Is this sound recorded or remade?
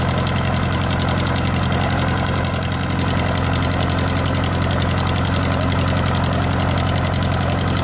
recorded